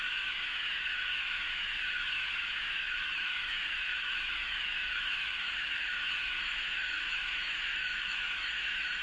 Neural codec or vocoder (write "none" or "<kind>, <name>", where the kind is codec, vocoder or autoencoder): autoencoder, DAC-VAE